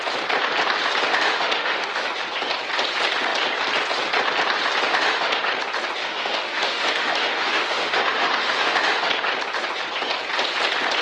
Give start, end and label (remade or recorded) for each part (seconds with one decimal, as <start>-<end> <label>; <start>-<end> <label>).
0.0-1.1 recorded; 1.1-2.1 remade; 2.1-4.9 recorded; 4.9-5.4 remade; 5.4-6.0 recorded; 6.0-9.1 remade; 9.1-11.0 recorded